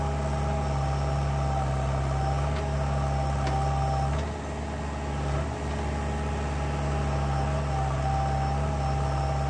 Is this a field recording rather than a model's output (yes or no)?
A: yes